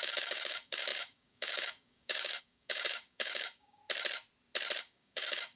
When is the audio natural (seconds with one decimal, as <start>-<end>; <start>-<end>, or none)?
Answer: 3.8-4.8